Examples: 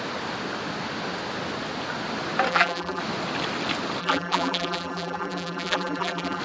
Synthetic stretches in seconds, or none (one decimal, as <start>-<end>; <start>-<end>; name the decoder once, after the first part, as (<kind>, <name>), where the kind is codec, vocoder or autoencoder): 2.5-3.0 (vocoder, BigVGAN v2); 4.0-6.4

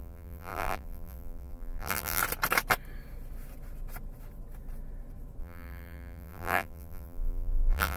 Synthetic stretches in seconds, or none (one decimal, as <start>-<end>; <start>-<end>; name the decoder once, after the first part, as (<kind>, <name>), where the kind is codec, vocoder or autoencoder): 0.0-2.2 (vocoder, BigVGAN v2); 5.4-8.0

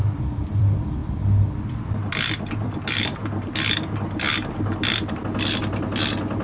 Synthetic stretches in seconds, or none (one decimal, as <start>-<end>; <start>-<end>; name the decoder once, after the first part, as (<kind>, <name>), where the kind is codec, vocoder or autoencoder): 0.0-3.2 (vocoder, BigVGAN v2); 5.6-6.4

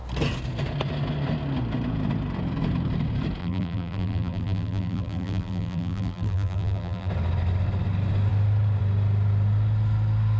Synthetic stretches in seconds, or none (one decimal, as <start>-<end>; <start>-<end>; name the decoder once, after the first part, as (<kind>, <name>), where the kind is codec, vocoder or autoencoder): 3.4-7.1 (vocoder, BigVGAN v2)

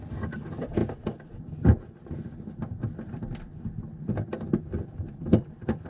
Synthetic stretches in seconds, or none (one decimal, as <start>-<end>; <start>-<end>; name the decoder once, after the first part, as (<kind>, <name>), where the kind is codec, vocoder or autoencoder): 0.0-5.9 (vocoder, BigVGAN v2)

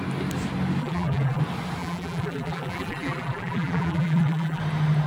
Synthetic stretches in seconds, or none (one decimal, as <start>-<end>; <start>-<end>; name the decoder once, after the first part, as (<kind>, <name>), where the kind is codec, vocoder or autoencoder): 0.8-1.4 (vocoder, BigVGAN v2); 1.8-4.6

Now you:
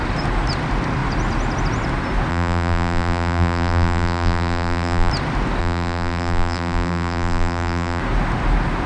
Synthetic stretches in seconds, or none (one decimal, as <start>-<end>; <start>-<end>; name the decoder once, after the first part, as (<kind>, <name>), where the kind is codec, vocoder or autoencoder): 2.3-5.1 (vocoder, BigVGAN v2); 5.6-8.0